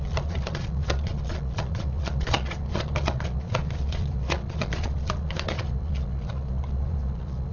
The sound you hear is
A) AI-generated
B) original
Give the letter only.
A